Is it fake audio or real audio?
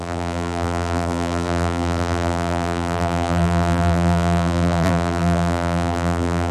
fake